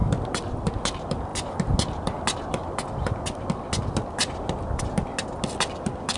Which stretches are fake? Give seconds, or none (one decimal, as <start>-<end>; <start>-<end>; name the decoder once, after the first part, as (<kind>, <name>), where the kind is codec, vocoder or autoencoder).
none